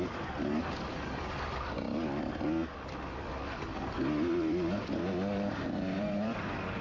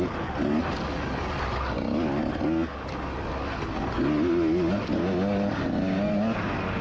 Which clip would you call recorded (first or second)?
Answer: second